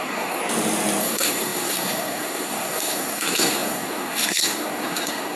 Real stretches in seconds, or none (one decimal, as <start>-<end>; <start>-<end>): 0.4-1.0

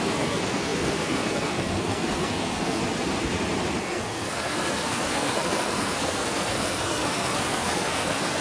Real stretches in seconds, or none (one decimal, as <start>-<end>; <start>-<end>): 2.8-3.8